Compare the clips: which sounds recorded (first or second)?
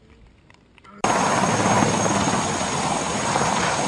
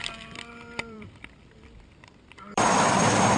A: first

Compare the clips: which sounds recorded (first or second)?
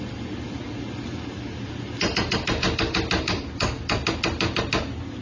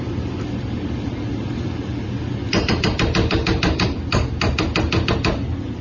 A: first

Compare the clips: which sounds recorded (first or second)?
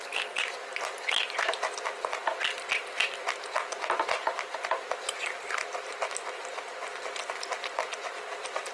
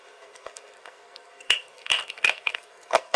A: first